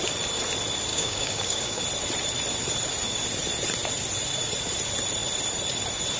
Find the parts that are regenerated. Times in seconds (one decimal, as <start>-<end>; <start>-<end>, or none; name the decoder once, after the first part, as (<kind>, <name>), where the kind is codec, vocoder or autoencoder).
0.9-1.8 (codec, DAC)